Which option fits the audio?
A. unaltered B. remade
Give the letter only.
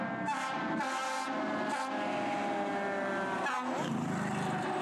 A